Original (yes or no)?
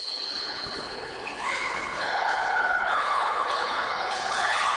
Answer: no